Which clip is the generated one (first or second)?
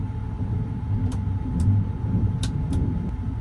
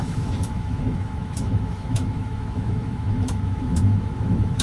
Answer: second